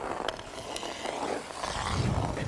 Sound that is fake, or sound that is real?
real